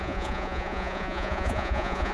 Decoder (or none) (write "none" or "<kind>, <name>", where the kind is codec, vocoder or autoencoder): vocoder, Vocos